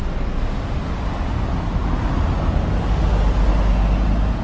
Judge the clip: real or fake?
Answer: real